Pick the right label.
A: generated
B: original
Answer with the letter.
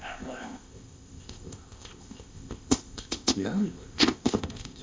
A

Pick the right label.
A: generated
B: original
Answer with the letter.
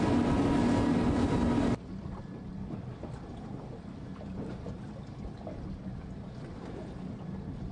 B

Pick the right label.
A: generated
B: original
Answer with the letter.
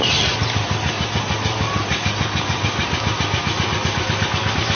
B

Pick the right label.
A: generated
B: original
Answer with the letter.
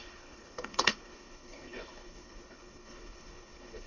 A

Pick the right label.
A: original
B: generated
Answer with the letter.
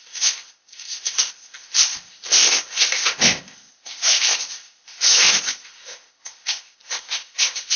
B